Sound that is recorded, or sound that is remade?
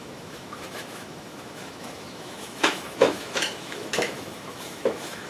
remade